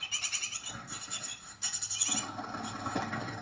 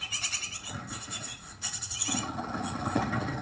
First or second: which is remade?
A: second